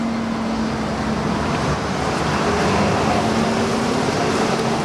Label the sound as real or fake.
real